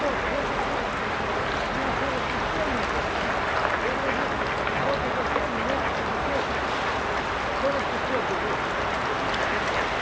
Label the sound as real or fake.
real